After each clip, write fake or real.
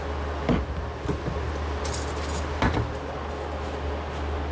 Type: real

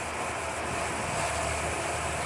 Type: real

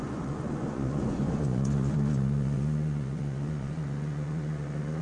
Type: fake